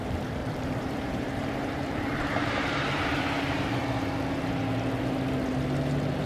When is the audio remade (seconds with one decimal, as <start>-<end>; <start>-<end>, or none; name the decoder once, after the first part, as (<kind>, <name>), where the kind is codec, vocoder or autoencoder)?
0.4-3.2 (vocoder, BigVGAN v2)